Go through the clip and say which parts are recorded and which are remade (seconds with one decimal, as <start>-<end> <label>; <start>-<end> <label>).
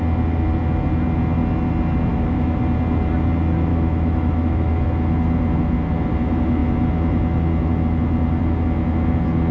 0.0-2.1 recorded; 2.1-2.6 remade; 2.6-3.7 recorded; 3.7-4.7 remade; 4.7-9.5 recorded